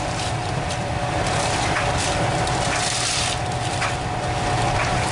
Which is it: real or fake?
fake